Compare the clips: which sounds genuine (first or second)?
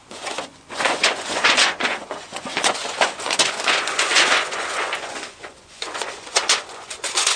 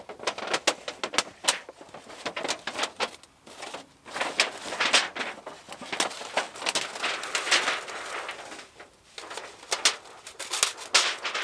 second